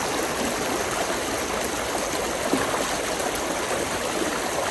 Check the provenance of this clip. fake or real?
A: real